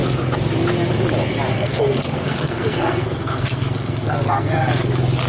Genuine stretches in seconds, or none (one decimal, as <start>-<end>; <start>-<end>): 0.0-1.5; 4.7-5.3